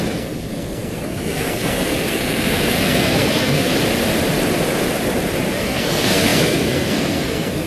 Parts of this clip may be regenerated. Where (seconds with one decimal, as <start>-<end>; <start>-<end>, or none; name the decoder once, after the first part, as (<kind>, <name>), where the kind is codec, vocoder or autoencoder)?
0.0-3.7 (codec, SNAC); 5.5-7.7